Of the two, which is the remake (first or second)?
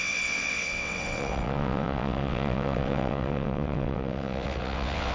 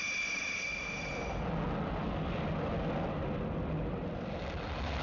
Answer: first